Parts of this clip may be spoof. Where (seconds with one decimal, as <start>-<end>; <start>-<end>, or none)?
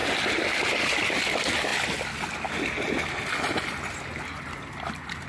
none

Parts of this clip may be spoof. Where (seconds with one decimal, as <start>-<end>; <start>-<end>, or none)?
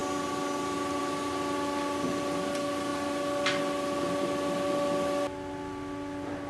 none